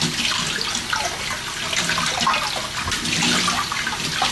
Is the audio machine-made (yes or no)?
no